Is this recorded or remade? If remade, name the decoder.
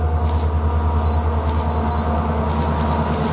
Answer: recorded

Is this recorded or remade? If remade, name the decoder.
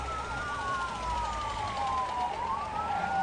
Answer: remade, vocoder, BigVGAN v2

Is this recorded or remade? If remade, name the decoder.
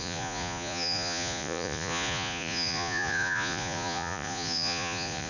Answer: remade, vocoder, Vocos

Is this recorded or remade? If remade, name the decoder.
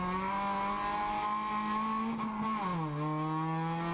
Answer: recorded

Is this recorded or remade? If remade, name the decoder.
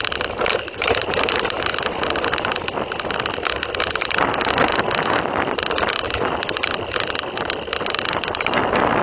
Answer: remade, vocoder, BigVGAN v2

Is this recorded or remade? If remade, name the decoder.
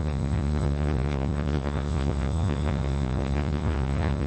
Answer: remade, vocoder, Vocos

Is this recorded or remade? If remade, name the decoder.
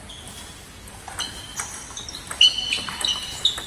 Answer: recorded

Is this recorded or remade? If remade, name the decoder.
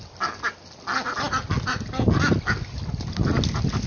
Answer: recorded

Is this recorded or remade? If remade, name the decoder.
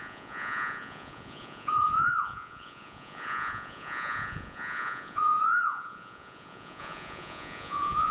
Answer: remade, vocoder, Vocos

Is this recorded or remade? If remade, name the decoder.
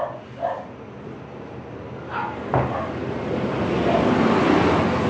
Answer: recorded